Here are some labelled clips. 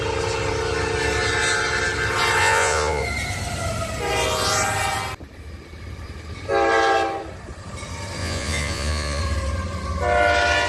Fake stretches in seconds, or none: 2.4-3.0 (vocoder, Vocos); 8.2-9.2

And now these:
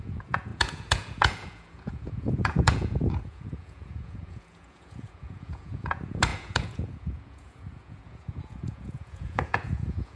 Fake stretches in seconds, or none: 0.0-10.2 (vocoder, Vocos)

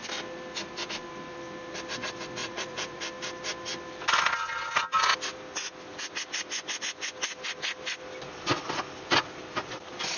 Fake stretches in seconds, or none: 2.4-3.0 (vocoder, Vocos)